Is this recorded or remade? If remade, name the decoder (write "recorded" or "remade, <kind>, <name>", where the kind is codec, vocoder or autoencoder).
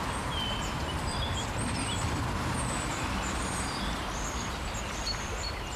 remade, vocoder, BigVGAN v2